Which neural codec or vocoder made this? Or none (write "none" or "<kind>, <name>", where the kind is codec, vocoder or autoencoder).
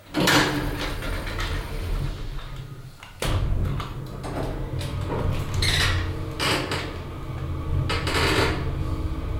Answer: none